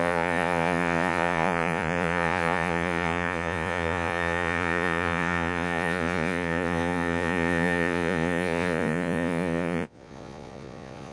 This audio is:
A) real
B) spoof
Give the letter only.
B